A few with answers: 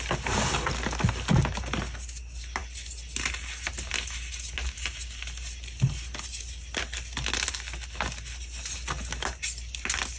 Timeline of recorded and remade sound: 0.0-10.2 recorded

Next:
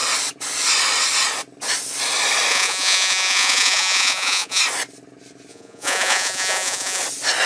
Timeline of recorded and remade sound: 0.0-2.5 recorded; 2.5-4.6 remade; 4.6-5.5 recorded; 5.5-7.0 remade; 7.0-7.5 recorded

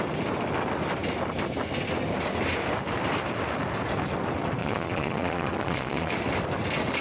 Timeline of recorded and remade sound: 0.0-4.6 recorded; 4.6-6.1 remade; 6.1-7.0 recorded

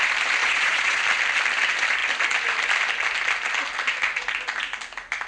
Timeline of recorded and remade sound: 0.0-0.4 recorded; 0.4-1.0 remade; 1.0-5.3 recorded

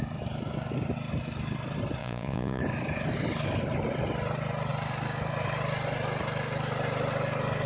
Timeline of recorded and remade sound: 0.0-2.0 recorded; 2.0-2.6 remade; 2.6-7.7 recorded

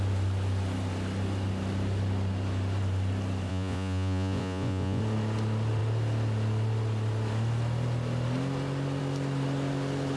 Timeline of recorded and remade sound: 0.0-3.5 recorded; 3.5-5.0 remade; 5.0-10.2 recorded

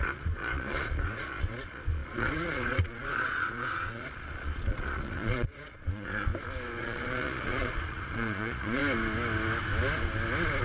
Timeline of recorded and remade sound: 0.0-6.3 remade; 6.3-6.8 recorded; 6.8-8.8 remade; 8.8-10.6 recorded